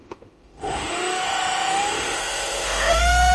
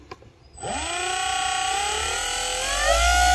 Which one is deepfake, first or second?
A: first